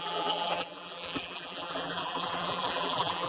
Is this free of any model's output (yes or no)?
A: no